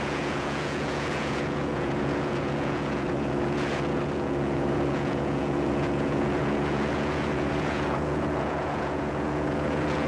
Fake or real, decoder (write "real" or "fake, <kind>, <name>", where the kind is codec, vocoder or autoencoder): fake, vocoder, Vocos